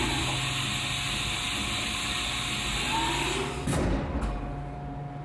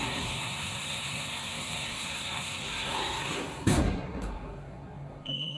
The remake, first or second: second